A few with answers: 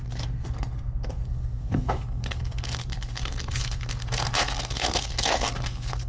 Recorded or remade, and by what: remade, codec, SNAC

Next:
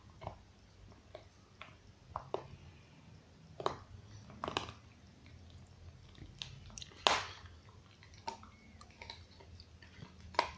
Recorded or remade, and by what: recorded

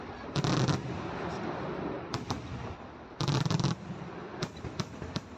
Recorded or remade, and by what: recorded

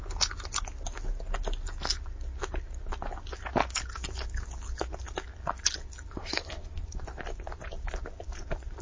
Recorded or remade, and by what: recorded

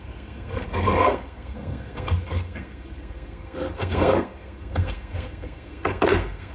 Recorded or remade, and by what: remade, codec, SNAC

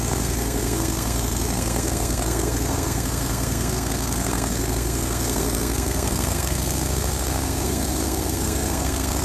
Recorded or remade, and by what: remade, codec, SNAC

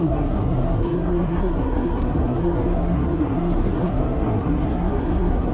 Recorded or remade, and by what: remade, codec, SNAC